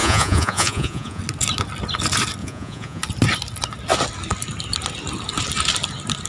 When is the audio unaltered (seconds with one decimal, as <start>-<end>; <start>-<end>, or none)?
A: 1.2-2.4; 3.0-6.3

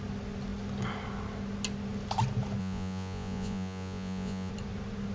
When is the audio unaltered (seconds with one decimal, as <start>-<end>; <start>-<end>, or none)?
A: 0.0-2.6; 4.5-5.1